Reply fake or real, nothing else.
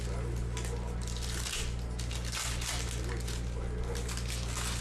real